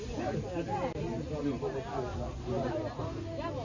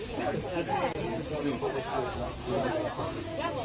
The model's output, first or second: second